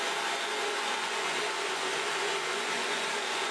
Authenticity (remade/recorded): remade